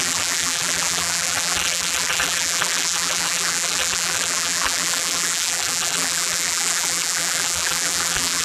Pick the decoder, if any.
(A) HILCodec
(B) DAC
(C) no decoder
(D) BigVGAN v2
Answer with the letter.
D